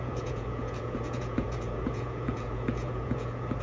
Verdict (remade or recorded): remade